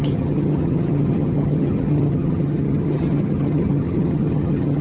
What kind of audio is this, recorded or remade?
remade